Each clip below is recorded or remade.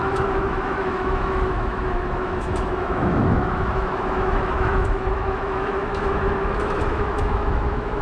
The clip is remade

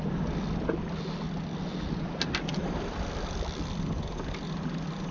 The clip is recorded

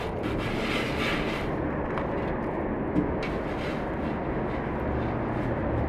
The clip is recorded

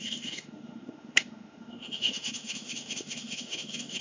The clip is remade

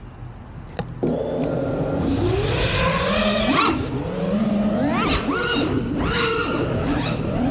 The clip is recorded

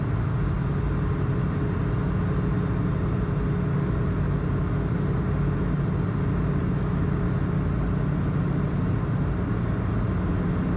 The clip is recorded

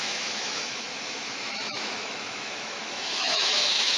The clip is remade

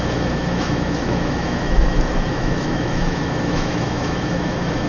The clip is remade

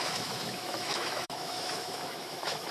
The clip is remade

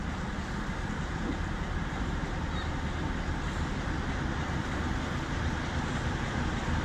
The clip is recorded